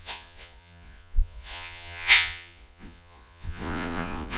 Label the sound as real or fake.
fake